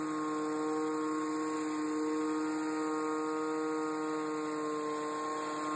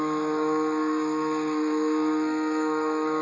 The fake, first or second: second